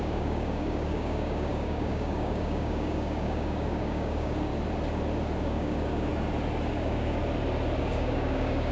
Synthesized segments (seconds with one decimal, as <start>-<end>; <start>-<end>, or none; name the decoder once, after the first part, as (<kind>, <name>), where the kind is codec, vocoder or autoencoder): 0.0-4.5 (codec, DAC); 5.4-6.1; 6.7-7.2; 7.8-8.7

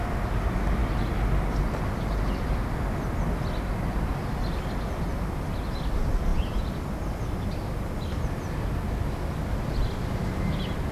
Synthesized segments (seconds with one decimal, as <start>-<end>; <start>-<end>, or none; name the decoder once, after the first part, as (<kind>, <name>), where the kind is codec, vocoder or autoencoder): 0.8-3.2 (vocoder, BigVGAN v2)

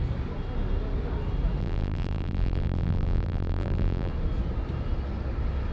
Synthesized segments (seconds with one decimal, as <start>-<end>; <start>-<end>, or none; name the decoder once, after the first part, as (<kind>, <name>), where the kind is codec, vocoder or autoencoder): 1.6-4.1 (vocoder, BigVGAN v2)

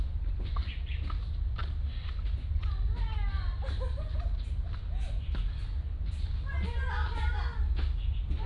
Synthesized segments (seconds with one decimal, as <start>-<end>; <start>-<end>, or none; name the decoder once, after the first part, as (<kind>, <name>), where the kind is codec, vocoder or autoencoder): none

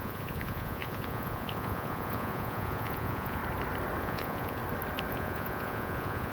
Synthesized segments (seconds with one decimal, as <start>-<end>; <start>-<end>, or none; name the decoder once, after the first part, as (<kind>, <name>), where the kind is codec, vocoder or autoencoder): 0.0-3.4 (vocoder, Vocos); 4.0-4.6; 5.1-6.3